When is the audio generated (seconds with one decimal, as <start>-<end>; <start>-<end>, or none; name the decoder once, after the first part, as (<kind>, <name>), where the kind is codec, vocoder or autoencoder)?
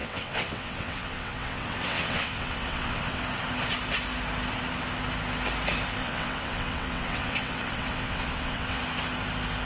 0.0-3.2 (vocoder, WaveNeXt); 6.0-8.8